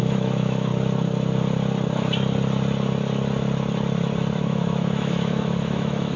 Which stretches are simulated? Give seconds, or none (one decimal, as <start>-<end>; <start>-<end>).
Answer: 0.0-0.7; 4.4-6.2